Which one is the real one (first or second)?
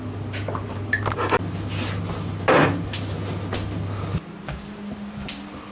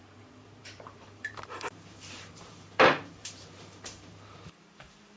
first